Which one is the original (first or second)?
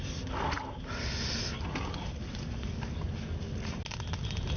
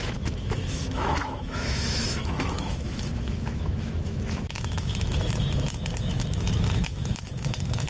first